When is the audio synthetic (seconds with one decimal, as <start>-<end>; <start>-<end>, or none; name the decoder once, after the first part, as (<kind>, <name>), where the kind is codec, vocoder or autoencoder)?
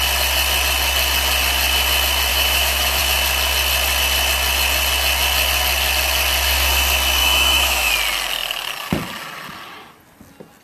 2.3-3.0 (autoencoder, DAC-VAE); 7.2-7.9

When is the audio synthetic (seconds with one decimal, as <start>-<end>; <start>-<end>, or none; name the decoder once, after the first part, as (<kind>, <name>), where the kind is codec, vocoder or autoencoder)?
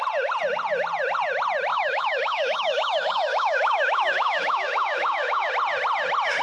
1.7-5.5 (autoencoder, DAC-VAE)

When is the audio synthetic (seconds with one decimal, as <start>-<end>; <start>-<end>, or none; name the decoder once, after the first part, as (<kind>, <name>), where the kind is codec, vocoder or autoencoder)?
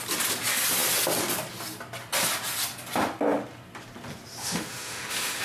4.4-5.4 (autoencoder, DAC-VAE)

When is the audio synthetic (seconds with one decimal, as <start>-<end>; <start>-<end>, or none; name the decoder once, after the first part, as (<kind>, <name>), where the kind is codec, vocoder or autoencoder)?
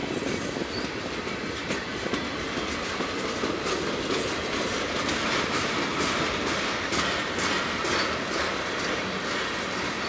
none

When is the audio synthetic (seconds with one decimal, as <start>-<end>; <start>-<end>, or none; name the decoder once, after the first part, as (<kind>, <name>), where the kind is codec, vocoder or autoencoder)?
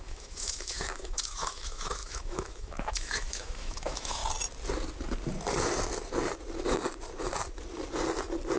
0.0-4.2 (autoencoder, DAC-VAE)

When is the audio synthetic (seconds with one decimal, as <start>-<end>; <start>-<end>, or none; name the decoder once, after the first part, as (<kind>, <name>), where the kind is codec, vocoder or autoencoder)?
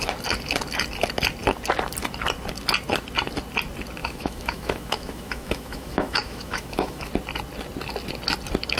4.0-7.1 (autoencoder, DAC-VAE)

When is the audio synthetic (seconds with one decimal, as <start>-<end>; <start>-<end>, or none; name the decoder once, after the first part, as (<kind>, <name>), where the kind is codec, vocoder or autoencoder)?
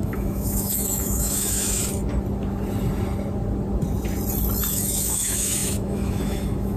0.0-1.8 (autoencoder, DAC-VAE); 4.7-6.8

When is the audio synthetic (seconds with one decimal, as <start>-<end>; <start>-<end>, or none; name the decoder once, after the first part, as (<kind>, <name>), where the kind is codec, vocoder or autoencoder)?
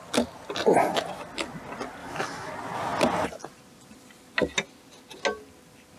2.0-2.5 (autoencoder, DAC-VAE)